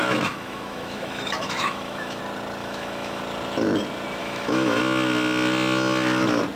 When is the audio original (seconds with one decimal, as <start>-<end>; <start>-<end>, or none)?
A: 2.2-2.6; 3.2-4.2; 4.8-6.6